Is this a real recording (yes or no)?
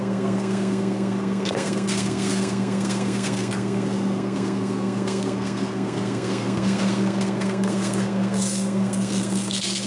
no